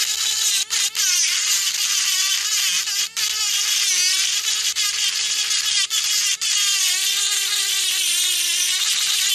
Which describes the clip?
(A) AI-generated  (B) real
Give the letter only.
B